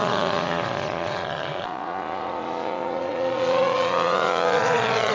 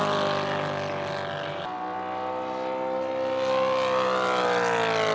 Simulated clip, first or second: first